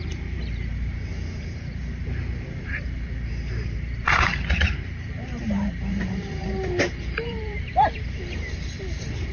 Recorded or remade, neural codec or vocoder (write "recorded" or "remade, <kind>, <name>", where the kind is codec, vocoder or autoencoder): remade, vocoder, BigVGAN v2